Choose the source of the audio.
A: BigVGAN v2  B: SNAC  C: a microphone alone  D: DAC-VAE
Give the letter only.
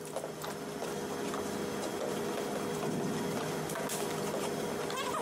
C